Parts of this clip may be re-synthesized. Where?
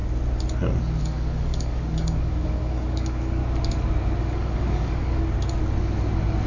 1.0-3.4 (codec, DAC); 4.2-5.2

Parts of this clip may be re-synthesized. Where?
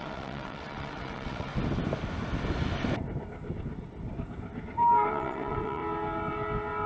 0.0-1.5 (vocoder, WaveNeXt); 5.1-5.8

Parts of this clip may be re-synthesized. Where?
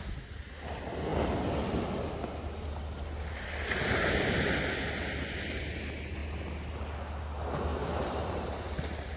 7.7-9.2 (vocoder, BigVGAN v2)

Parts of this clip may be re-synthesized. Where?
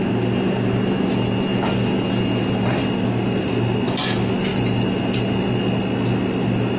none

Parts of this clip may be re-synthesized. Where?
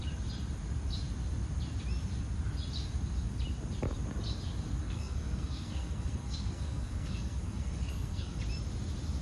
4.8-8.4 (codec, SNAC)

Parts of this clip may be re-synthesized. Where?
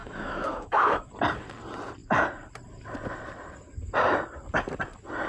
0.0-1.1 (autoencoder, DAC-VAE)